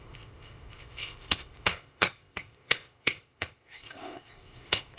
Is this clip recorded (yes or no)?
no